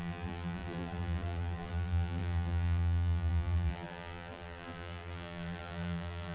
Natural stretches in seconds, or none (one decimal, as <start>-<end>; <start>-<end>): none